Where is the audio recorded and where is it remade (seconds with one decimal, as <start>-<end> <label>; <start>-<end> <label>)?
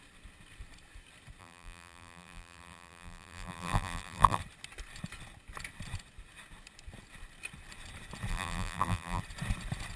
0.0-1.4 recorded; 1.4-4.4 remade; 4.4-8.3 recorded; 8.3-9.2 remade; 9.2-10.0 recorded